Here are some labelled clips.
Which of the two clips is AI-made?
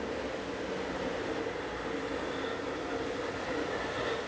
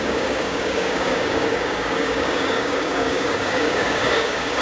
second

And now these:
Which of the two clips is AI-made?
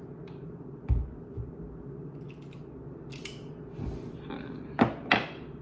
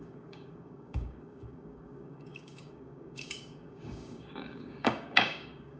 second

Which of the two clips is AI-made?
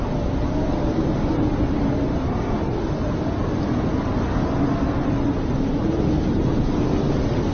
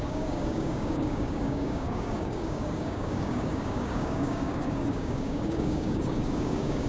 second